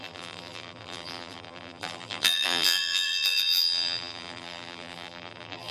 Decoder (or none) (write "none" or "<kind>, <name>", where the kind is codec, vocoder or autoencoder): vocoder, BigVGAN v2